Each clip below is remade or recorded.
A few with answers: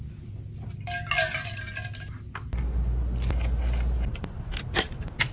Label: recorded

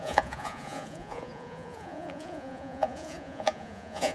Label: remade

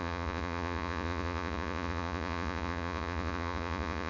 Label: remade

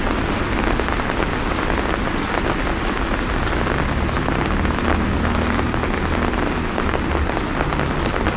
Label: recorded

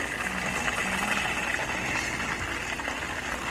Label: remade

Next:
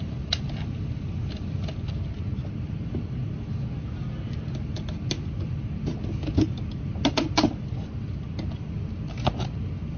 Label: recorded